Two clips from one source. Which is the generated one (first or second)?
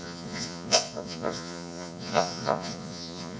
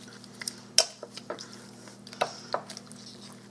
first